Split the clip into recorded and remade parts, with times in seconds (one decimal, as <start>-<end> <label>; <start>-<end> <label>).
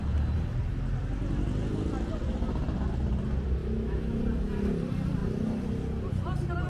0.0-3.6 recorded; 3.6-4.2 remade; 4.2-6.7 recorded